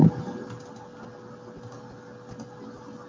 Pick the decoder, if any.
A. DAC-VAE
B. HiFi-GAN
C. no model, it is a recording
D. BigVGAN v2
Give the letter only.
C